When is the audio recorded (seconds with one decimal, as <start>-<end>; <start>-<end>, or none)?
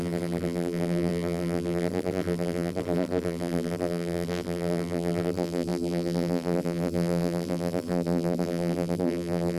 none